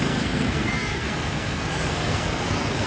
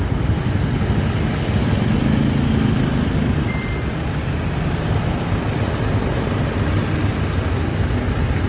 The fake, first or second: first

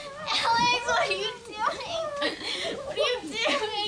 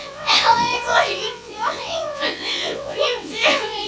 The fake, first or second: second